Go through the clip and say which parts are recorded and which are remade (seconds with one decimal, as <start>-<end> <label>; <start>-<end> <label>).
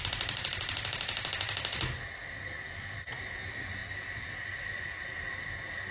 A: 0.0-5.9 recorded